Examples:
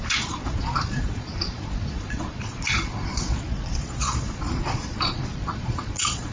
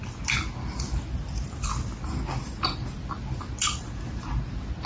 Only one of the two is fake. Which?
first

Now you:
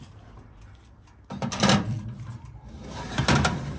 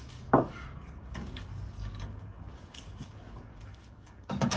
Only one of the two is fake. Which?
second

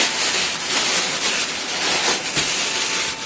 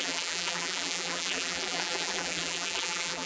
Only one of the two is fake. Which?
second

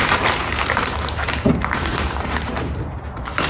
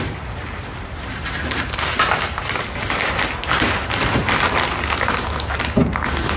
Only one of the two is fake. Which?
first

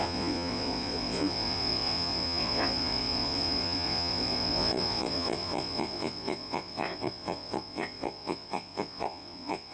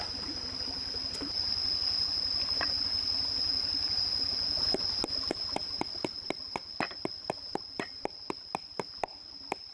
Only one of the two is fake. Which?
first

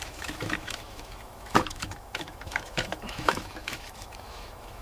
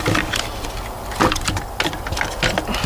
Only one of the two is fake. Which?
first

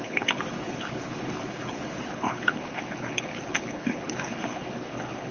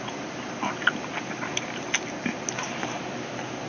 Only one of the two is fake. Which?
first